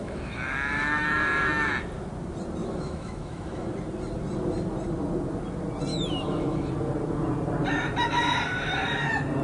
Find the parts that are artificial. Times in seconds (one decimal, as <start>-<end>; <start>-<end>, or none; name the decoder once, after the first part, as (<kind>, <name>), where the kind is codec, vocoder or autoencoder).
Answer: 0.0-1.7 (autoencoder, DAC-VAE); 2.6-3.7; 5.9-6.7